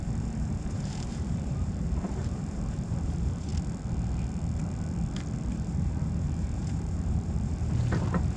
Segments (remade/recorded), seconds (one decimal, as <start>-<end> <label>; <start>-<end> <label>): 0.0-3.5 remade; 3.5-5.5 recorded; 5.5-8.4 remade